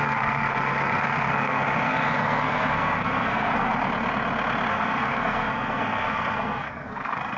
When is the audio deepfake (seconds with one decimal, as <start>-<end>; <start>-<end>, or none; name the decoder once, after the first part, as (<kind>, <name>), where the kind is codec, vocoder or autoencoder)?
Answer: 0.0-3.7 (codec, SNAC); 4.7-7.4